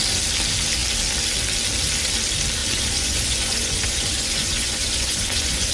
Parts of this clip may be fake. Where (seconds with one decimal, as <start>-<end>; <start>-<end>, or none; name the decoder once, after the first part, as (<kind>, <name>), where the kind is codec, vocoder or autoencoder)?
2.6-5.7 (vocoder, Vocos)